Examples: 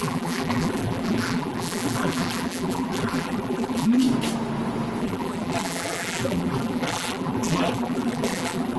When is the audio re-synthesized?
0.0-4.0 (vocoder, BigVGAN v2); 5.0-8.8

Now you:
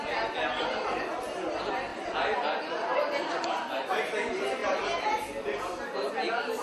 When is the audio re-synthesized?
none

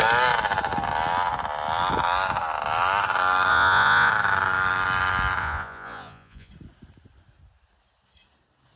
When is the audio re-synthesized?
3.5-4.1 (vocoder, Vocos); 5.4-6.5

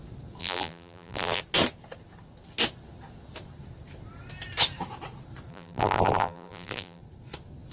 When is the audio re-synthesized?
0.4-1.4 (vocoder, BigVGAN v2); 5.5-7.0

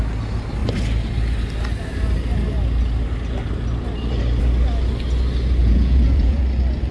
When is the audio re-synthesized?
5.6-6.4 (vocoder, Vocos)